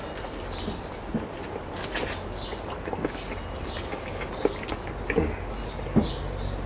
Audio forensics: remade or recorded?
recorded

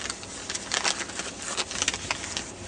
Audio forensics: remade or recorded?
recorded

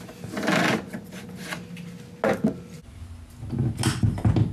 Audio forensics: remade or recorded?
recorded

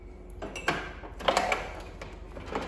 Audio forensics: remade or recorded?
recorded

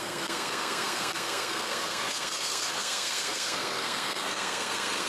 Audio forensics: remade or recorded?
remade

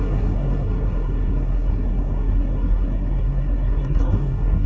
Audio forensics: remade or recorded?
remade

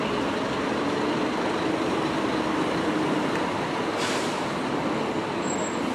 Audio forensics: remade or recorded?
recorded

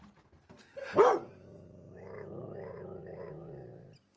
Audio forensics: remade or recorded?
recorded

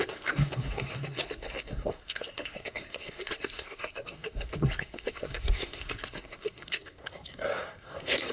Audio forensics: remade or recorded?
remade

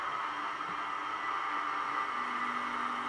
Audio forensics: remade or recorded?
recorded